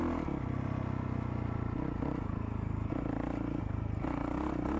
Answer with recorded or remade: recorded